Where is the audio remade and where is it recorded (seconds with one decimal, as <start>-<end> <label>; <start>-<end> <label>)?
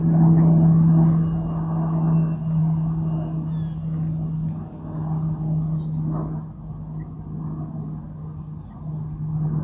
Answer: 0.0-9.6 recorded